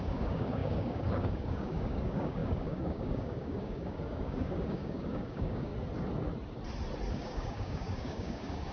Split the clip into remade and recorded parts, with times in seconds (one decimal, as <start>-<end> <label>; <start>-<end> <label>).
0.0-5.7 remade; 5.7-7.1 recorded; 7.1-8.7 remade